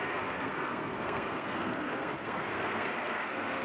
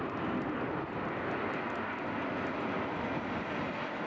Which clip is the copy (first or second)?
first